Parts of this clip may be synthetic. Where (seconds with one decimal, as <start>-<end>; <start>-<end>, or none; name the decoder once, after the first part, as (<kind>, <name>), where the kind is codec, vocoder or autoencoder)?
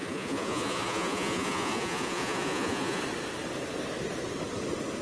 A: 0.0-3.0 (vocoder, Vocos)